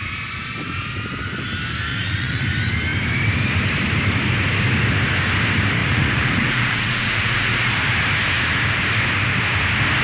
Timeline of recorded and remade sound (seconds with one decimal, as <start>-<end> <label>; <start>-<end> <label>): 0.0-1.9 recorded; 1.9-2.4 remade; 2.4-5.8 recorded; 5.8-7.7 remade; 7.7-10.0 recorded

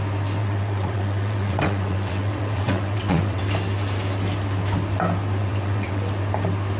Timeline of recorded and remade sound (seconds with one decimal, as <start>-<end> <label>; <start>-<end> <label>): 0.0-0.4 recorded; 0.4-3.4 remade; 3.4-5.4 recorded; 5.4-6.1 remade; 6.1-6.8 recorded

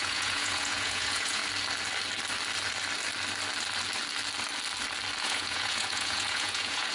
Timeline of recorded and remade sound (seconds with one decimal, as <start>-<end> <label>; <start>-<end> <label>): 0.0-1.4 remade; 1.4-5.2 recorded; 5.2-6.9 remade

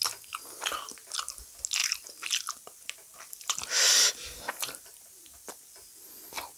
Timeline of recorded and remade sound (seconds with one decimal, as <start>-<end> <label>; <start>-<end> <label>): 0.0-1.8 recorded; 1.8-5.7 remade; 5.7-6.6 recorded

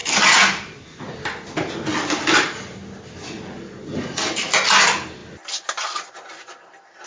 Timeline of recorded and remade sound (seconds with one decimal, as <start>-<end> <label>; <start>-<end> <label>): 0.0-7.1 recorded